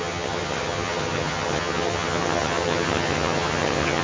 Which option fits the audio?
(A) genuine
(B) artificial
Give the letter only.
B